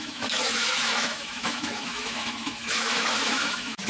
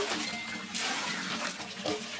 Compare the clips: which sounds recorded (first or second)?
second